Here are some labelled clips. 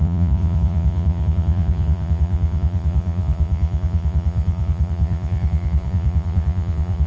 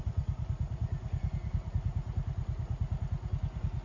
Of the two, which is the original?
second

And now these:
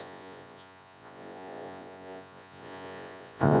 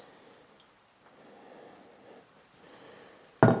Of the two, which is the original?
second